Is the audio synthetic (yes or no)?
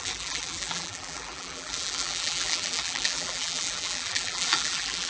yes